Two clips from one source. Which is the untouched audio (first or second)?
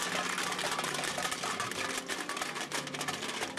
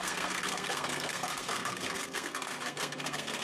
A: first